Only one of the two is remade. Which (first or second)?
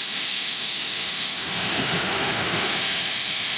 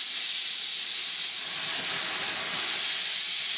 first